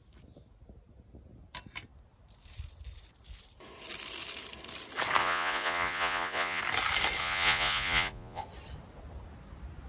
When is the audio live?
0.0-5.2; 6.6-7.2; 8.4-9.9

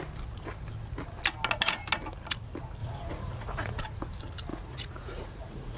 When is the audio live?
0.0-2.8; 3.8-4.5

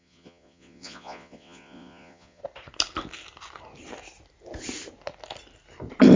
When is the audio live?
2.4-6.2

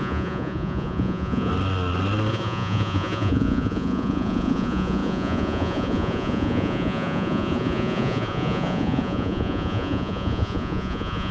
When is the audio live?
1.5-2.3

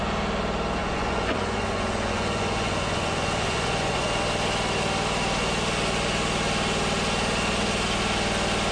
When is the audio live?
0.0-0.8; 4.2-8.7

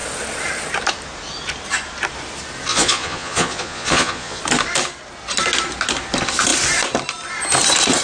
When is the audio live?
0.0-2.7; 4.4-8.0

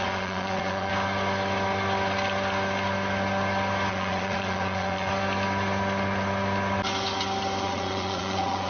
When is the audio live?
0.9-3.9; 5.1-7.6

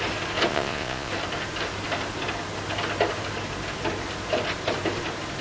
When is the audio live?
0.0-0.5; 1.1-5.4